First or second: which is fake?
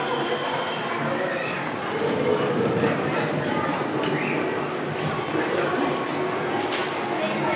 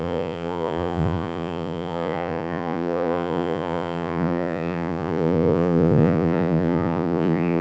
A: second